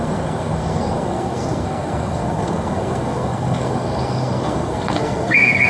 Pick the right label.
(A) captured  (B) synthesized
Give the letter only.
B